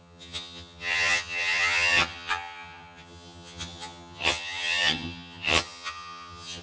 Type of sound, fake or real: fake